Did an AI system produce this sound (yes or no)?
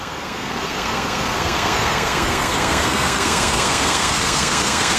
yes